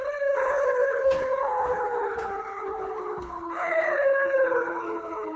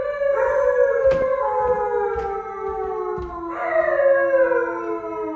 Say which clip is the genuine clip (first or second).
second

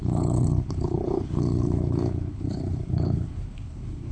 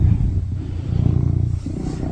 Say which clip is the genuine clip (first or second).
second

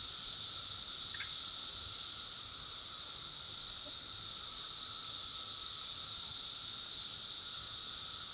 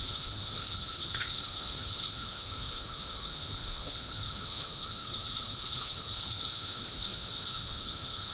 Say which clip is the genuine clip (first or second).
first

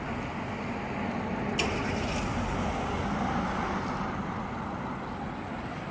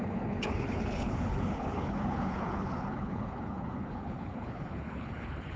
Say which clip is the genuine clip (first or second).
first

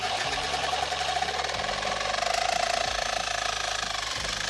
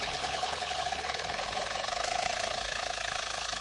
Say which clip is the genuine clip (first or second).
first